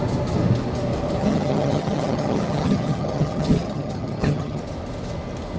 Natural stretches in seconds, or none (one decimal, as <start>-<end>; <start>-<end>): 0.0-1.2; 4.6-5.6